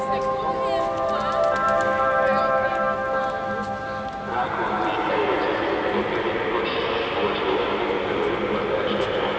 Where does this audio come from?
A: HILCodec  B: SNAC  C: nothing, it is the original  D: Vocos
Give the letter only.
C